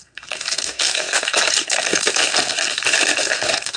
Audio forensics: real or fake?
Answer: fake